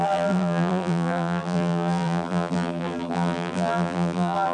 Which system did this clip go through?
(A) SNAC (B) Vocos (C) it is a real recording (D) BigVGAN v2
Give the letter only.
D